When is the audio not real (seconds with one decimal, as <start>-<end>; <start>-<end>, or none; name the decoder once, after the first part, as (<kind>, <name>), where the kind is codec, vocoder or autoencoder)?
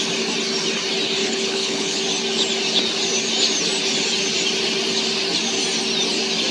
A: 1.2-2.0 (codec, HILCodec)